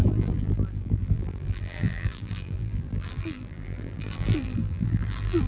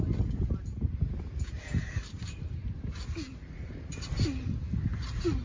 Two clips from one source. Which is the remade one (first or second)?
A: first